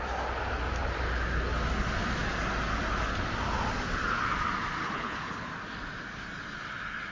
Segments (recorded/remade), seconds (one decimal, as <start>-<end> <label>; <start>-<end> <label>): 0.0-4.8 recorded; 4.8-5.5 remade; 5.5-7.1 recorded